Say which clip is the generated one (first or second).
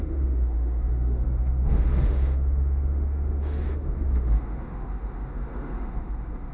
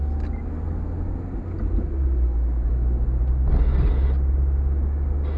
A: first